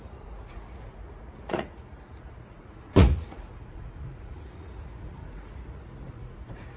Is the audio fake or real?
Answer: fake